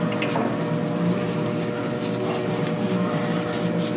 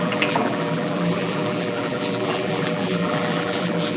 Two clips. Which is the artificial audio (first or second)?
second